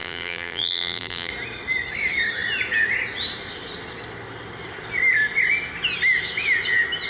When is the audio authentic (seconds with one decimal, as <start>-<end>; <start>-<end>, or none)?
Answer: 1.3-7.1